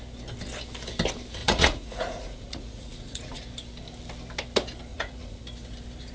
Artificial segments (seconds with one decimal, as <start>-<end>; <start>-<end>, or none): 1.4-3.4; 4.9-5.4